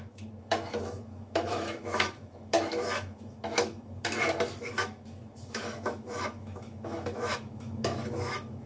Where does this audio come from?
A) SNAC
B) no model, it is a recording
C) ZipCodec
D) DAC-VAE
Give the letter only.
D